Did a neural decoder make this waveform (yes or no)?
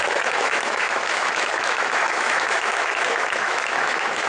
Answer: yes